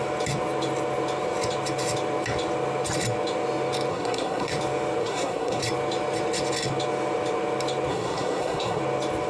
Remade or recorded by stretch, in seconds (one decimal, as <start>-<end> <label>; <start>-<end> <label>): 0.0-3.9 recorded; 3.9-4.5 remade; 4.5-5.0 recorded; 5.0-5.6 remade; 5.6-7.9 recorded; 7.9-8.8 remade; 8.8-9.3 recorded